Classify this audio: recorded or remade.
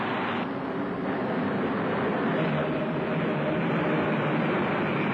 recorded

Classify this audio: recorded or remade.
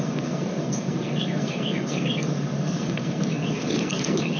remade